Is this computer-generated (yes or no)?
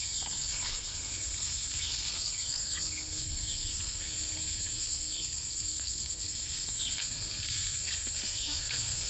yes